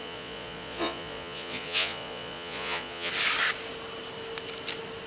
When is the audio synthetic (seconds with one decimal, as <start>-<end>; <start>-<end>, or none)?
0.0-3.1